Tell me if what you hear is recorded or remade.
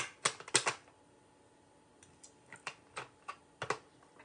recorded